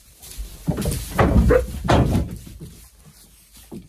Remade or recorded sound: recorded